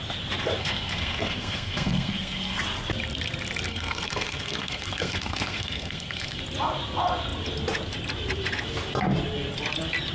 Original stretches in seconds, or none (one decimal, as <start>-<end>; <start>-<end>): 0.0-0.6; 2.6-3.7; 6.4-10.1